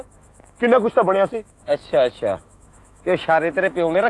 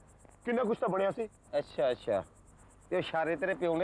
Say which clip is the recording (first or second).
second